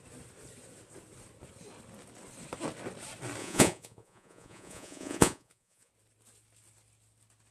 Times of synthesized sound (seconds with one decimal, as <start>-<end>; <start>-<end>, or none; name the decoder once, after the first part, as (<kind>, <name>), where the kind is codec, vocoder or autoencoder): 3.4-5.9 (vocoder, Vocos)